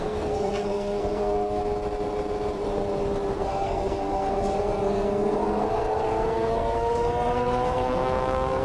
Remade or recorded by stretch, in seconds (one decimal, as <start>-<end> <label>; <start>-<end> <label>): 0.0-1.6 remade; 1.6-3.3 recorded; 3.3-8.6 remade